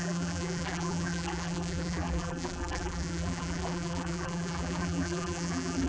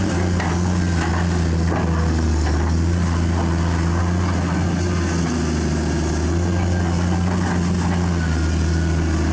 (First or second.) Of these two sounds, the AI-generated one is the first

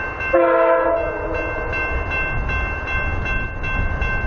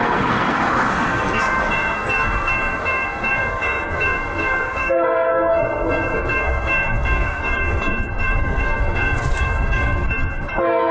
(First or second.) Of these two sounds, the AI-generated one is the second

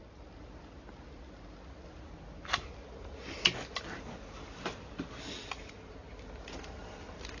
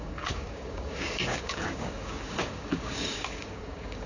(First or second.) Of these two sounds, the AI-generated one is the second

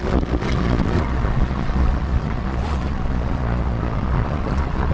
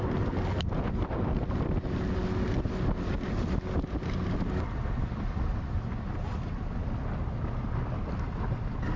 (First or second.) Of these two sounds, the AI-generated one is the first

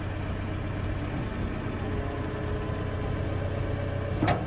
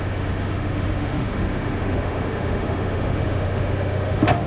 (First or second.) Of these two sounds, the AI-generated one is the second